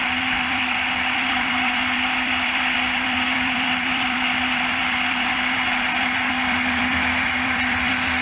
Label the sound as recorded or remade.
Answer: remade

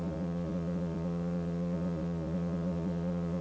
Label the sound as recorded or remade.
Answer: remade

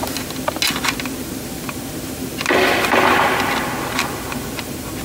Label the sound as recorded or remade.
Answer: recorded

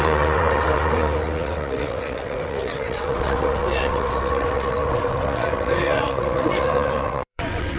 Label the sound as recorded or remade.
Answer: remade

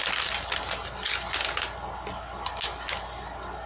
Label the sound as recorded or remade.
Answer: recorded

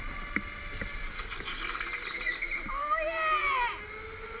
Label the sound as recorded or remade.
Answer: recorded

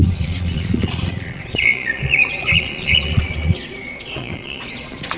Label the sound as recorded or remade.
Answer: remade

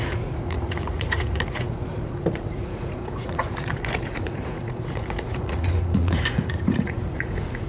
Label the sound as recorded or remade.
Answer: remade